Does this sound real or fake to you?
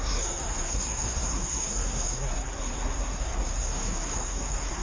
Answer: fake